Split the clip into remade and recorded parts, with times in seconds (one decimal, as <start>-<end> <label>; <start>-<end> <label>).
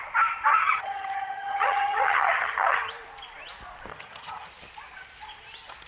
0.0-0.5 recorded; 0.5-2.9 remade; 2.9-3.9 recorded; 3.9-4.5 remade; 4.5-5.9 recorded